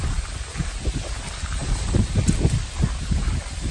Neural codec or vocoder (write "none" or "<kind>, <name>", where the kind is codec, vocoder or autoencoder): none